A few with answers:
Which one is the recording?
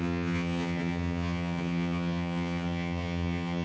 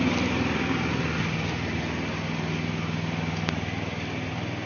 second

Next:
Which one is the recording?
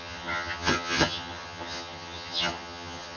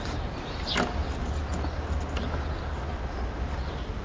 second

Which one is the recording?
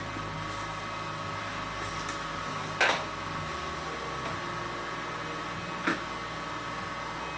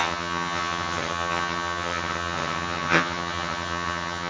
first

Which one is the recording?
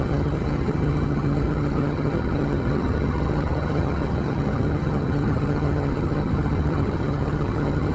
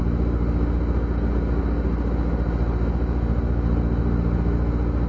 second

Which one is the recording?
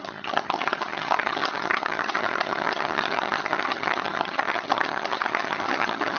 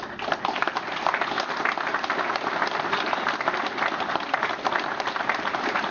second